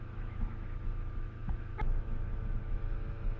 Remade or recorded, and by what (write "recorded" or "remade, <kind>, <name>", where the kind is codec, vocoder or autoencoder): remade, autoencoder, DAC-VAE